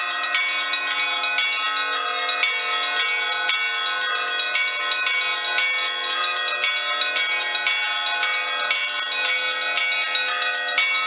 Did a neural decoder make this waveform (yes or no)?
no